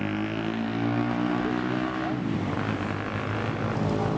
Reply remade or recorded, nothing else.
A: recorded